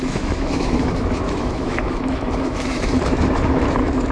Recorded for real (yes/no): no